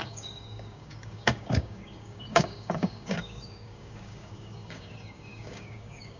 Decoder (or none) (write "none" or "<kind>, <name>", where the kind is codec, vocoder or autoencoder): codec, DAC